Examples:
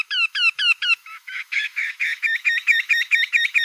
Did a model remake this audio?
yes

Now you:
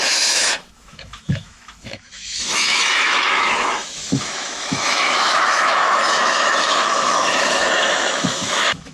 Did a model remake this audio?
yes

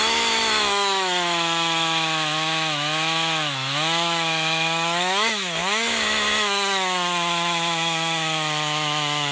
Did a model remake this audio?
yes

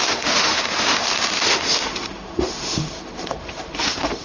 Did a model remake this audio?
yes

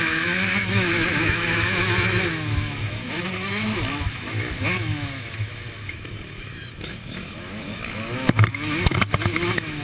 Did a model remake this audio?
yes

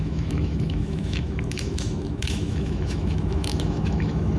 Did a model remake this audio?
yes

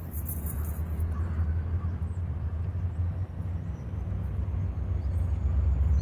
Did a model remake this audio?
no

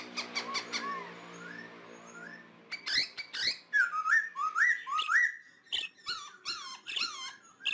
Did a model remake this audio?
no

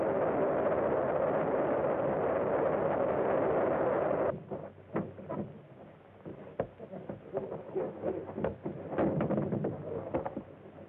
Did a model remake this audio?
no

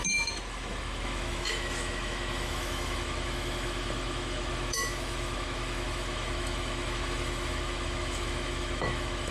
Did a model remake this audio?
yes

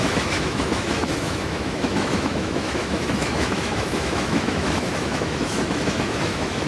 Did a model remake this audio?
yes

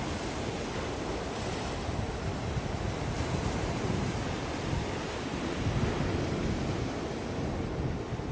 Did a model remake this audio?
no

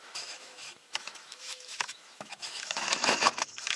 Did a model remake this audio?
yes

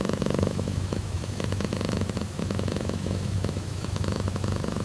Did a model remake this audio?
yes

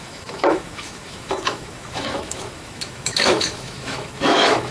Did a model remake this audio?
yes